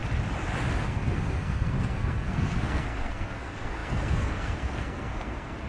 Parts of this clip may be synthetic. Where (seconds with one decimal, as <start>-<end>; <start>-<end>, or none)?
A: 0.8-5.7